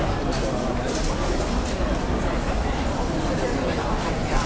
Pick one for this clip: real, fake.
fake